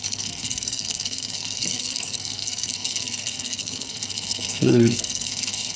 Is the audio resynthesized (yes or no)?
yes